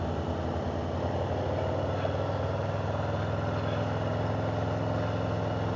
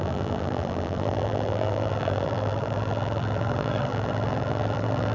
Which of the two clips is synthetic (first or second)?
second